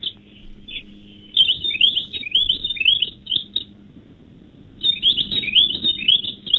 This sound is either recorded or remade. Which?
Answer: recorded